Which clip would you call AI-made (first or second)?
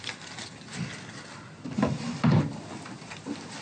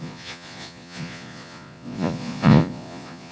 second